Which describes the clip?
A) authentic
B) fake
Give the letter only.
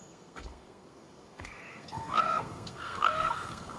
B